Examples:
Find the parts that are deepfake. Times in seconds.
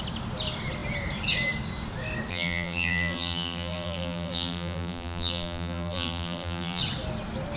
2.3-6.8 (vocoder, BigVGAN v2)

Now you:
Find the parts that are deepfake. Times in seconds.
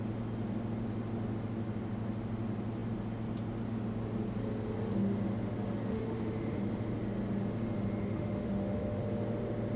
5.9-6.6 (autoencoder, DAC-VAE); 8.0-9.0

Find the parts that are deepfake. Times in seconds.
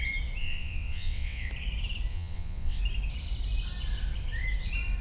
0.4-1.5 (vocoder, WaveNeXt); 2.1-2.8